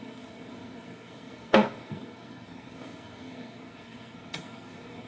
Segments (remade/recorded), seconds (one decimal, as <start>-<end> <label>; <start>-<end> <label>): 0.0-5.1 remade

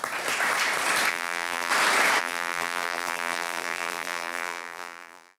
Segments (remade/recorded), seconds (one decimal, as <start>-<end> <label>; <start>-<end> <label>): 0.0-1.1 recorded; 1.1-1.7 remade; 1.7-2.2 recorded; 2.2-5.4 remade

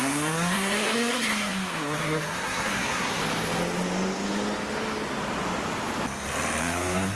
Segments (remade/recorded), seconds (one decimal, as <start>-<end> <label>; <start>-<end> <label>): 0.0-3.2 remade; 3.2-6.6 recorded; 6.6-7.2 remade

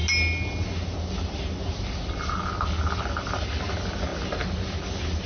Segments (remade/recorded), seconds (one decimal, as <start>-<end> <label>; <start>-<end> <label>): 0.0-5.3 recorded

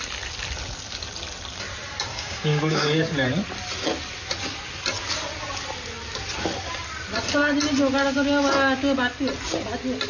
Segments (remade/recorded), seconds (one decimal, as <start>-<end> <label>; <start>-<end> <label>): 0.0-2.1 recorded; 2.1-3.0 remade; 3.0-10.1 recorded

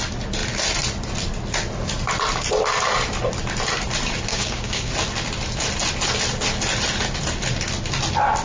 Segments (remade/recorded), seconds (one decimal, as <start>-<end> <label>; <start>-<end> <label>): 0.0-4.3 recorded; 4.3-4.9 remade; 4.9-8.4 recorded

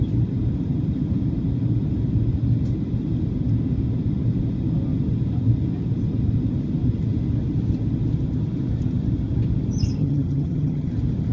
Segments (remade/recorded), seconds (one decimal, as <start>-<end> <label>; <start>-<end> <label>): 0.0-10.0 recorded; 10.0-10.9 remade; 10.9-11.3 recorded

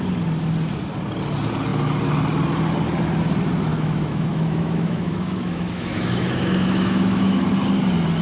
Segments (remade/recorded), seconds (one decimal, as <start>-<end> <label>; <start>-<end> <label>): 0.0-3.7 recorded; 3.7-7.5 remade; 7.5-8.2 recorded